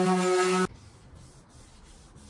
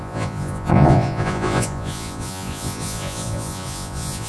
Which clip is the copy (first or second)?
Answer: second